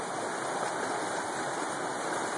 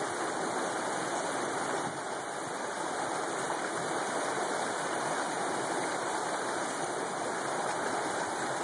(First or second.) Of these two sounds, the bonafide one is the first